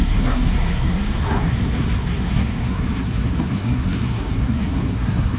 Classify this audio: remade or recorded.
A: remade